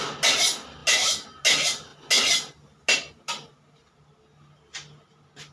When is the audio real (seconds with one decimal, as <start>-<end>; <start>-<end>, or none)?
0.0-5.5